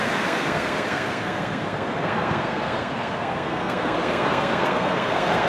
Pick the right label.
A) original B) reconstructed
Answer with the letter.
B